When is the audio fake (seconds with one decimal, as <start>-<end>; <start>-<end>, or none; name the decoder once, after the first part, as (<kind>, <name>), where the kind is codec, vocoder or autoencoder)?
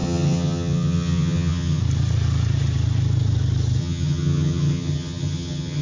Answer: 0.0-1.8 (vocoder, HiFi-GAN); 3.8-5.8